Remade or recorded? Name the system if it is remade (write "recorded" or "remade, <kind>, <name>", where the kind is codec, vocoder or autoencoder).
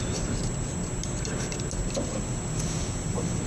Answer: recorded